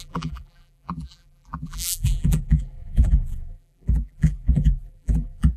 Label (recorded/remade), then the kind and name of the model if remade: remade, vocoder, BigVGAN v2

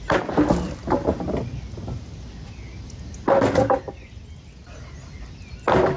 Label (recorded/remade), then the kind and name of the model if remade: recorded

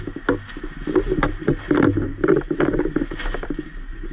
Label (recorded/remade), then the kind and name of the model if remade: recorded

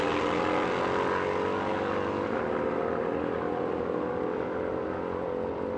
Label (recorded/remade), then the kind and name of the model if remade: recorded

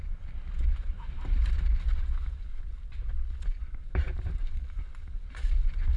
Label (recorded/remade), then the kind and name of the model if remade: recorded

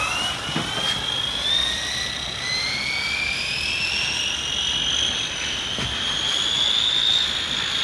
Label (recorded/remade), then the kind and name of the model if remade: recorded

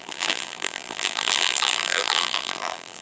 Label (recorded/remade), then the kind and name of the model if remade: remade, vocoder, BigVGAN v2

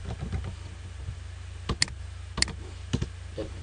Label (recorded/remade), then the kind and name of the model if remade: recorded